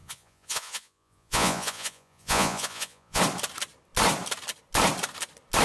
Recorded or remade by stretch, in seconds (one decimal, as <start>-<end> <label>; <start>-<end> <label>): 0.0-3.2 remade; 3.2-5.6 recorded